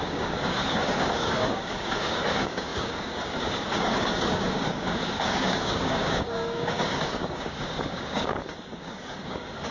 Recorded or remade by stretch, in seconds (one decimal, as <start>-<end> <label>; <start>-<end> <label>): 0.0-9.7 remade